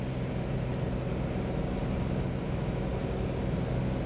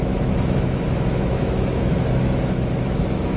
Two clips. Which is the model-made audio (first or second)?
second